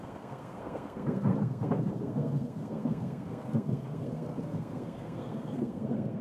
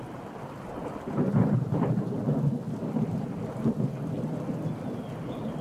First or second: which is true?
second